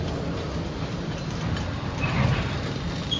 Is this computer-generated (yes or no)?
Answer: no